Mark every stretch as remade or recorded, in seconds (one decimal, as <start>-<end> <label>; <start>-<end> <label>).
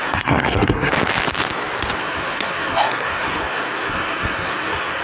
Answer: 0.0-0.9 remade; 0.9-2.0 recorded; 2.0-5.0 remade